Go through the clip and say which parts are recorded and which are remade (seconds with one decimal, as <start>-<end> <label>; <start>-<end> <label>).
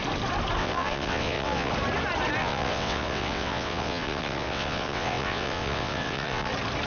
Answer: 0.0-0.6 recorded; 0.6-1.7 remade; 1.7-2.4 recorded; 2.4-6.5 remade; 6.5-6.9 recorded